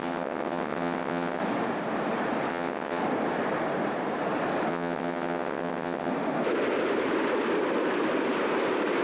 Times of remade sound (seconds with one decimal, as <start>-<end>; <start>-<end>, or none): 0.0-1.4; 2.5-3.0; 4.7-6.1